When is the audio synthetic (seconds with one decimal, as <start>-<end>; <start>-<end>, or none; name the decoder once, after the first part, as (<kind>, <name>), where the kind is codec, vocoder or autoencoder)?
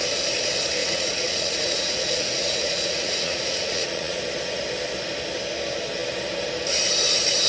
0.8-4.2 (vocoder, Vocos)